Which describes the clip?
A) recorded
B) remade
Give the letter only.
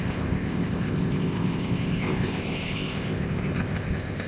B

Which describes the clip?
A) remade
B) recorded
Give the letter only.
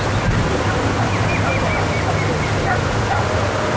B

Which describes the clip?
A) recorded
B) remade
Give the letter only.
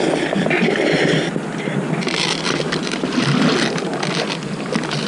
A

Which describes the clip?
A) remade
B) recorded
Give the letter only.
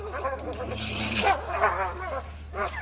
B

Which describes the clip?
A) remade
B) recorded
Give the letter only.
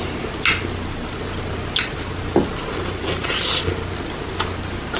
B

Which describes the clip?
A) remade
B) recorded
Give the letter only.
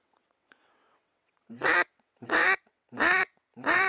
A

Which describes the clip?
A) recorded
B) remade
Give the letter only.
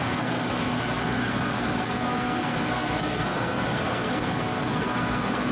B